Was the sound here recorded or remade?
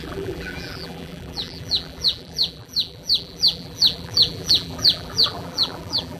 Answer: remade